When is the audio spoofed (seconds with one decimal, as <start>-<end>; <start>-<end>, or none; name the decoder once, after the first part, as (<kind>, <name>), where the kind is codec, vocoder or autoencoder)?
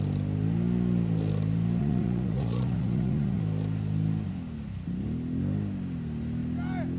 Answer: 1.8-3.4 (vocoder, Vocos)